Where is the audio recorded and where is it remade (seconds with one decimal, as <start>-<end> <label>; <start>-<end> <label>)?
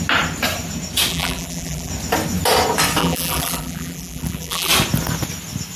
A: 0.0-1.1 recorded; 1.1-1.9 remade; 1.9-3.0 recorded; 3.0-4.7 remade; 4.7-5.8 recorded